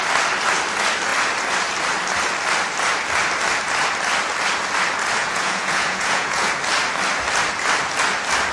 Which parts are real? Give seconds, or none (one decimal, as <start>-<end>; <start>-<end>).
0.0-5.2; 6.5-8.5